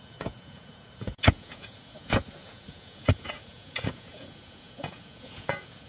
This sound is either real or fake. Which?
fake